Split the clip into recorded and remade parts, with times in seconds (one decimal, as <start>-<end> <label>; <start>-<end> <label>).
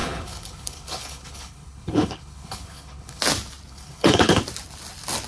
0.0-3.2 remade; 3.2-3.7 recorded; 3.7-4.4 remade; 4.4-5.3 recorded